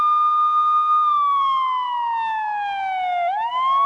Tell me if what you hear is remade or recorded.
recorded